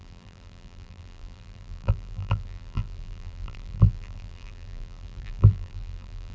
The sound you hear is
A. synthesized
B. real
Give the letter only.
A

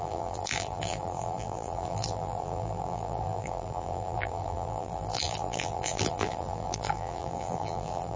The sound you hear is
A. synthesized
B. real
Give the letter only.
A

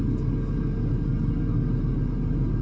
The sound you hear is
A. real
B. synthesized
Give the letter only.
A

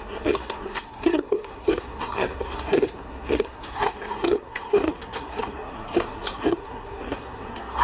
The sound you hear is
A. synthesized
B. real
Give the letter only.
A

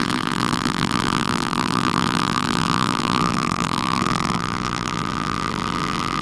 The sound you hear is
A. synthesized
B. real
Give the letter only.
A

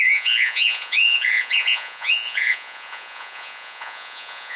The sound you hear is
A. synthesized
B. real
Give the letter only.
A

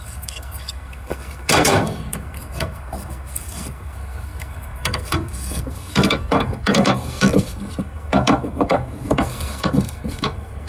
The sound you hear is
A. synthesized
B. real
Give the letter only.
A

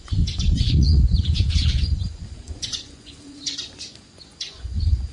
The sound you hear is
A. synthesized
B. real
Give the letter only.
A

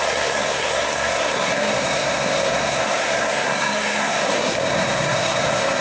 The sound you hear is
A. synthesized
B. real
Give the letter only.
A